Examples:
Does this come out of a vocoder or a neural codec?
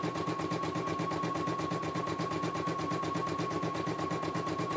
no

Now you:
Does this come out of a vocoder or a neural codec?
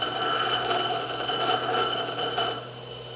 no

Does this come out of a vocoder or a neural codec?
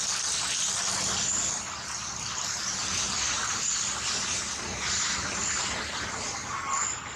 no